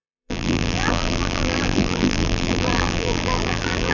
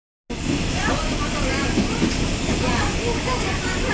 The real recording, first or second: second